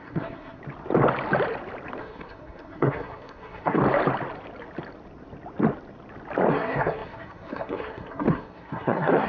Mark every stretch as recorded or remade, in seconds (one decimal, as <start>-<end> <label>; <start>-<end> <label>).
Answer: 0.0-0.6 remade; 0.6-2.0 recorded; 2.0-3.8 remade; 3.8-6.5 recorded; 6.5-9.3 remade